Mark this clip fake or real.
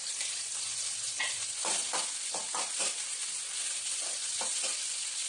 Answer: real